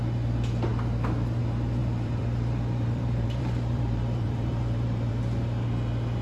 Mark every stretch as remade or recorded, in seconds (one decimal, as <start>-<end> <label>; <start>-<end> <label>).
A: 0.0-1.8 recorded; 1.8-5.1 remade; 5.1-6.2 recorded